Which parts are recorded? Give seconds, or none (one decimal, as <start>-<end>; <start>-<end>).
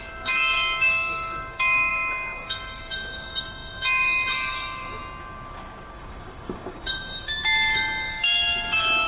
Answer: 5.0-5.9